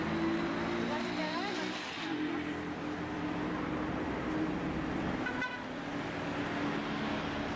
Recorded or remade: recorded